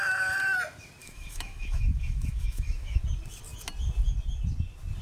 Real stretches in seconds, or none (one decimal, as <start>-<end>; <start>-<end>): 0.0-1.0; 3.0-5.0